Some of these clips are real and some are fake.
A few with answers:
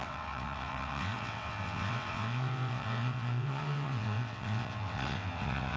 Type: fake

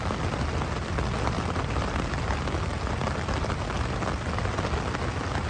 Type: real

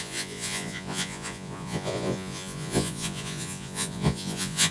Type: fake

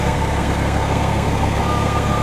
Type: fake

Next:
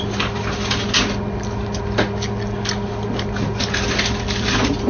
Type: real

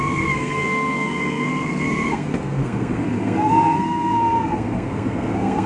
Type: fake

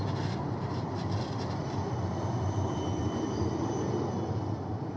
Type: real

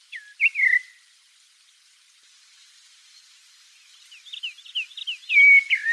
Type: real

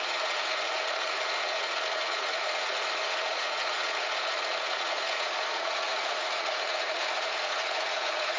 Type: fake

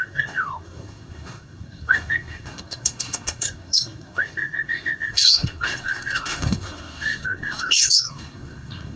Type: fake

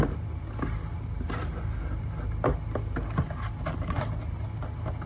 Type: real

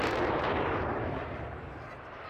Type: fake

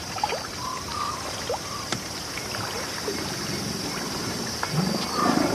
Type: fake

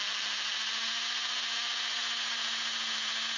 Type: real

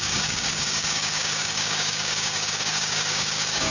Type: fake